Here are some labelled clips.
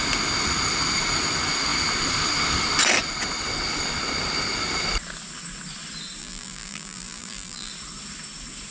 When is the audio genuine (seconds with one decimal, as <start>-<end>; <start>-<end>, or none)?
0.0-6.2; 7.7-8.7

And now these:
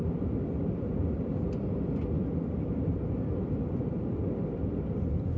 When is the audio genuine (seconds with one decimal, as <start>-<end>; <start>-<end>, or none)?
1.3-2.9

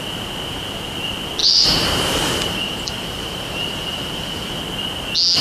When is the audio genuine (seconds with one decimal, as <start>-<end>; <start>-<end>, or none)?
0.0-1.4; 4.6-5.4